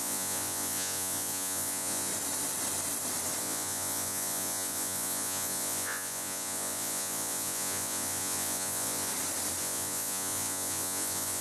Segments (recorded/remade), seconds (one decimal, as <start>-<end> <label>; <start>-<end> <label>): 0.0-2.1 remade; 2.1-3.4 recorded; 3.4-9.1 remade; 9.1-9.6 recorded; 9.6-11.4 remade